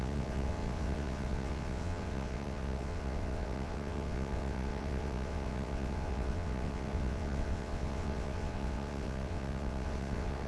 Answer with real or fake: fake